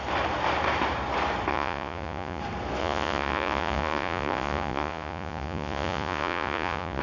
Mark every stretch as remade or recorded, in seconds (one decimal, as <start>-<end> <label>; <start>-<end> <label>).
0.0-1.5 recorded; 1.5-2.4 remade; 2.4-2.8 recorded; 2.8-7.0 remade